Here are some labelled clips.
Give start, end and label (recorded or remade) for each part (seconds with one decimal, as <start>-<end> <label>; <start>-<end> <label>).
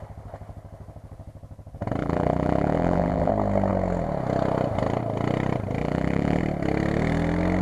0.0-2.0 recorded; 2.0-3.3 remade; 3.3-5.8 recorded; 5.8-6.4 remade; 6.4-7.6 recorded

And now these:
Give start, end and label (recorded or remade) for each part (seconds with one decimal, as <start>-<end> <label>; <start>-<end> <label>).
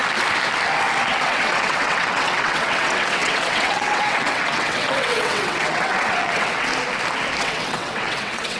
0.0-1.1 recorded; 1.1-6.7 remade; 6.7-7.4 recorded; 7.4-8.6 remade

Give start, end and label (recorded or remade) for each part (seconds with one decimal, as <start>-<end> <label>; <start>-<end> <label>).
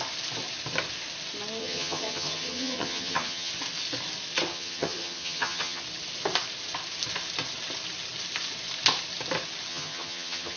0.0-1.6 recorded; 1.6-3.5 remade; 3.5-4.5 recorded; 4.5-5.8 remade; 5.8-9.7 recorded; 9.7-10.6 remade